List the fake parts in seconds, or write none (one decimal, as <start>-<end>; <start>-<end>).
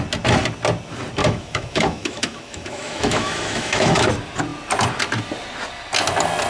1.2-4.1